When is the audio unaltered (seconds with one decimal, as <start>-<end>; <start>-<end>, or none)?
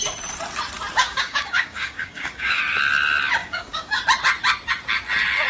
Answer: 0.0-1.0; 2.6-3.4; 4.0-5.5